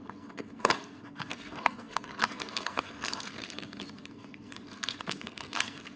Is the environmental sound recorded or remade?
remade